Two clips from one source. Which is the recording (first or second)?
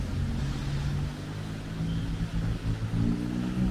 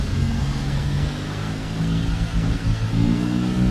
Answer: first